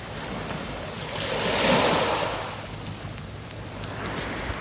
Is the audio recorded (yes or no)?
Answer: yes